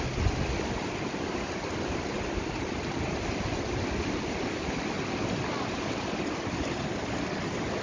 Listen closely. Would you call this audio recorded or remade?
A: recorded